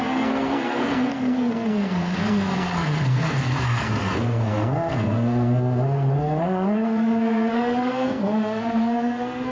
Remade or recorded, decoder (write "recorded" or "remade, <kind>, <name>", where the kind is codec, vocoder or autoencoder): remade, codec, SNAC